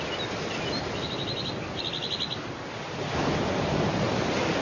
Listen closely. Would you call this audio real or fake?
real